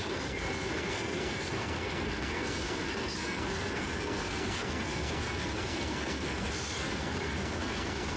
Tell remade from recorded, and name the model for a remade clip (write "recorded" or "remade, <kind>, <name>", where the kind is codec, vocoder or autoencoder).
remade, codec, SNAC